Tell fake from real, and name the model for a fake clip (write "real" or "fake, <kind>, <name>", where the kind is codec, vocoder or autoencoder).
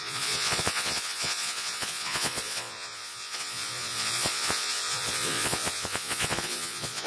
fake, vocoder, Vocos